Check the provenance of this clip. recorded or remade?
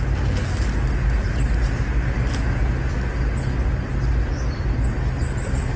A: recorded